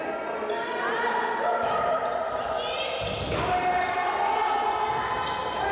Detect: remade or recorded recorded